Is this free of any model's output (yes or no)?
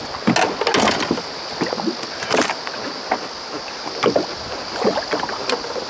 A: yes